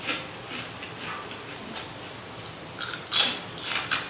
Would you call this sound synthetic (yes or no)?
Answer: no